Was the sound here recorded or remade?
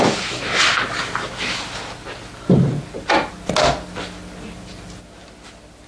recorded